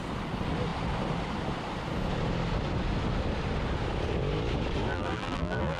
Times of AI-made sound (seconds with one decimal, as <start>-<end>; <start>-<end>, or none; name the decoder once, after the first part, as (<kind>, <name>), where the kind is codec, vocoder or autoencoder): 4.9-5.8 (vocoder, BigVGAN v2)